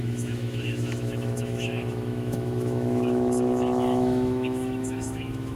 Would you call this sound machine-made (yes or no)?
yes